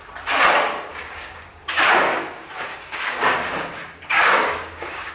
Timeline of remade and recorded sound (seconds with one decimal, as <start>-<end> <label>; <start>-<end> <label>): 0.0-0.9 recorded; 0.9-2.2 remade; 2.2-2.7 recorded; 2.7-3.5 remade; 3.5-4.1 recorded; 4.1-5.1 remade